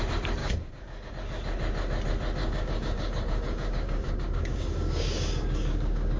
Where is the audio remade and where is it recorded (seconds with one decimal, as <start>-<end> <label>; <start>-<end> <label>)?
0.0-0.4 recorded; 0.4-1.1 remade; 1.1-2.4 recorded; 2.4-6.2 remade